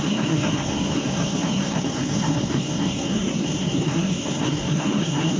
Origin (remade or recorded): remade